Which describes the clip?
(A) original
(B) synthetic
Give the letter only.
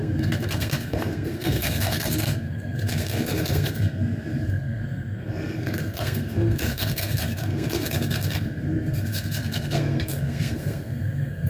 B